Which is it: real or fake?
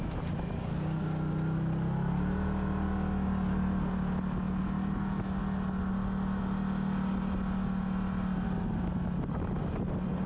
real